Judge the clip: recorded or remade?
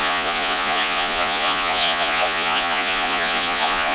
remade